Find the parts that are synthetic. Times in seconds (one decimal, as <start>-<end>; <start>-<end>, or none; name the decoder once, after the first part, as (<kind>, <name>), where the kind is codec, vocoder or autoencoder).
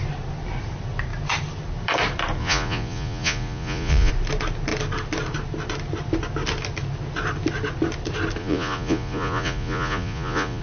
2.4-4.1 (vocoder, Vocos); 8.4-10.6